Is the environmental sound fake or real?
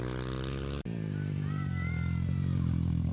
real